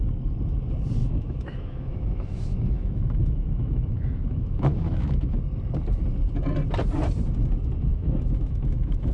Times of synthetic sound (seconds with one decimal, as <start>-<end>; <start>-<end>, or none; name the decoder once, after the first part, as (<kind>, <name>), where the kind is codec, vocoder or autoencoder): 1.0-5.4 (autoencoder, DAC-VAE); 7.9-9.1